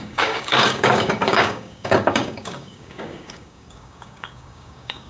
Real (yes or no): no